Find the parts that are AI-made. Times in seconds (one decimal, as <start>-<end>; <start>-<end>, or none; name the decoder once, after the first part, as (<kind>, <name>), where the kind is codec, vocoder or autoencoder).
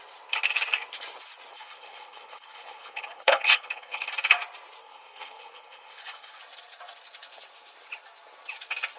1.5-4.1 (codec, HILCodec); 4.8-6.4